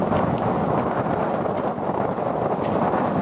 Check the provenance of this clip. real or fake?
real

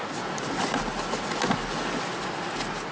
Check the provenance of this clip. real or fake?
real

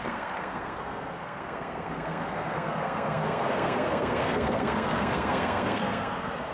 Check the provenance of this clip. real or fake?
fake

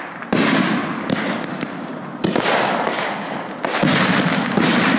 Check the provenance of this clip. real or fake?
real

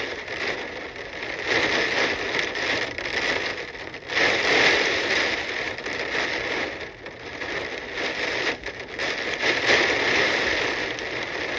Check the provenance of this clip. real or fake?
real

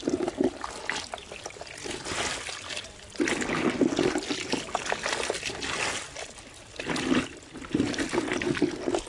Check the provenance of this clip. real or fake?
real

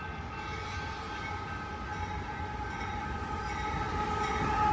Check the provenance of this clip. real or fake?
real